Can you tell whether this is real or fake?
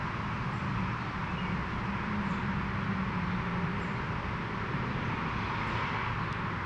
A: real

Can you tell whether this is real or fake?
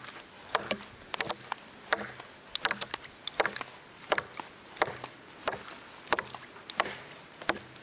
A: real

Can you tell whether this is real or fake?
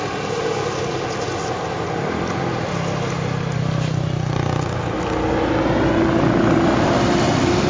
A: real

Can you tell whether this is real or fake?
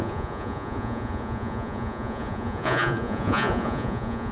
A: fake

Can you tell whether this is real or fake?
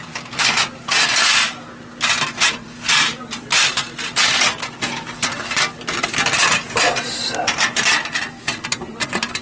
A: real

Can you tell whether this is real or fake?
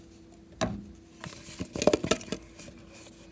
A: real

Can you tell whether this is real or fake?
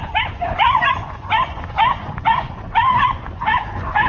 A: fake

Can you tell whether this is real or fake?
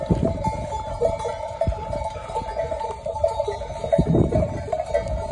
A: real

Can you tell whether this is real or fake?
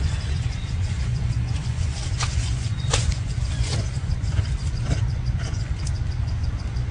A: fake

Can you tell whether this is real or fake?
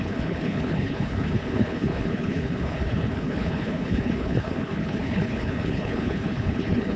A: fake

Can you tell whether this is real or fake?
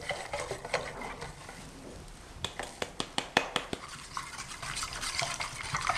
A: fake